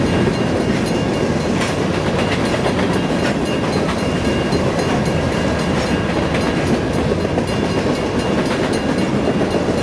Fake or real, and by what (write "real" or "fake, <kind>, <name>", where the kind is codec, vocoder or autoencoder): real